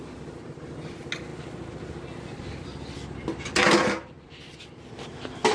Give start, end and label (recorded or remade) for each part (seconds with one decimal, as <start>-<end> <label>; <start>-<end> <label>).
0.0-5.5 recorded